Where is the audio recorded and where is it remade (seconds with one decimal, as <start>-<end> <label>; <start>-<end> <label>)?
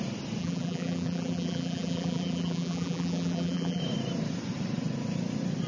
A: 0.0-0.4 recorded; 0.4-3.8 remade; 3.8-5.7 recorded